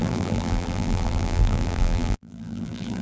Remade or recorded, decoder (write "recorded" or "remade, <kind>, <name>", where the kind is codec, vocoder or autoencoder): remade, vocoder, BigVGAN v2